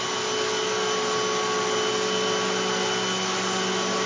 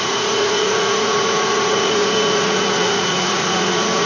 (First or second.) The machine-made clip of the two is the second